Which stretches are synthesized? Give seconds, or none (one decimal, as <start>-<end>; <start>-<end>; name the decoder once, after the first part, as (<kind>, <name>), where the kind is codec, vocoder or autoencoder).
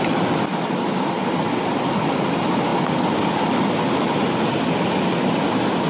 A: none